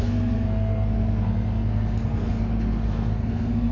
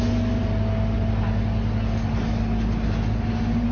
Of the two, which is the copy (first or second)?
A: first